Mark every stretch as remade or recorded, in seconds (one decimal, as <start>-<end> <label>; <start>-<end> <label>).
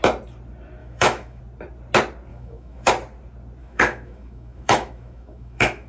0.0-0.8 recorded; 0.8-1.4 remade; 1.4-2.3 recorded; 2.3-2.9 remade; 2.9-3.6 recorded; 3.6-5.9 remade